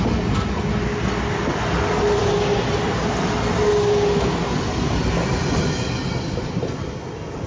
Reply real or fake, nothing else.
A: real